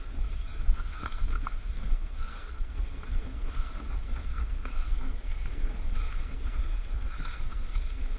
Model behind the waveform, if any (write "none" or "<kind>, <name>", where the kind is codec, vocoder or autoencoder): codec, SNAC